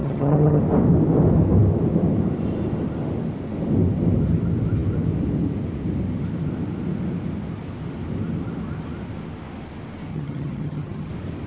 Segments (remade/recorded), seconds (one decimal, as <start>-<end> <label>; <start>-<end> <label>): 0.0-0.6 remade; 0.6-10.1 recorded; 10.1-11.1 remade; 11.1-11.5 recorded